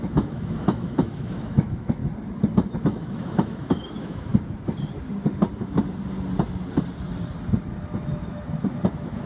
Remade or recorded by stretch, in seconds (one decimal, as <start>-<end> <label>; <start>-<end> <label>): 0.0-2.0 remade; 2.0-2.8 recorded; 2.8-4.3 remade; 4.3-8.9 recorded; 8.9-9.3 remade